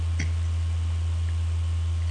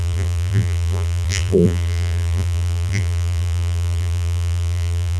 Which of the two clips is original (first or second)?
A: first